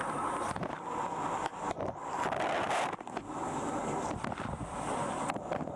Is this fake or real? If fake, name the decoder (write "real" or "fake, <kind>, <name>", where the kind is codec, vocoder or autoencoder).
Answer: real